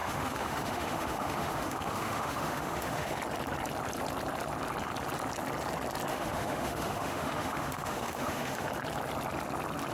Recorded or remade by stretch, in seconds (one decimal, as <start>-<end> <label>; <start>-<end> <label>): 0.0-3.2 remade; 3.2-6.1 recorded; 6.1-8.7 remade; 8.7-9.9 recorded